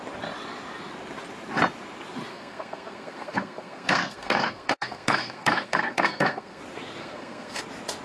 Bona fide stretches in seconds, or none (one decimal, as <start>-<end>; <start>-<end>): 0.0-2.3; 6.6-7.0; 7.6-8.0